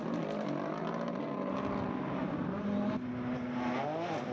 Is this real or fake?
real